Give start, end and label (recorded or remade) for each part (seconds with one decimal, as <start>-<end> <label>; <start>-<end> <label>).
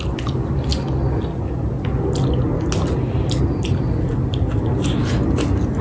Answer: 0.0-5.8 recorded